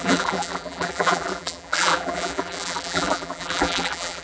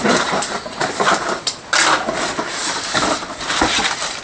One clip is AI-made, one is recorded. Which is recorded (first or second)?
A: second